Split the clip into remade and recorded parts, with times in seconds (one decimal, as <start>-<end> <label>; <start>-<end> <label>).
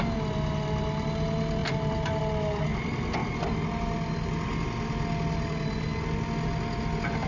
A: 0.0-1.6 recorded; 1.6-2.2 remade; 2.2-7.3 recorded